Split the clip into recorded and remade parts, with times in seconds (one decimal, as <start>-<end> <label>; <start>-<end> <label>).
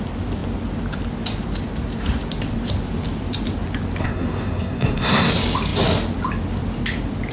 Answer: 0.0-4.0 recorded; 4.0-5.3 remade; 5.3-7.3 recorded